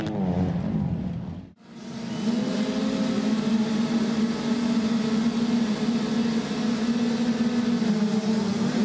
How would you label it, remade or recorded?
recorded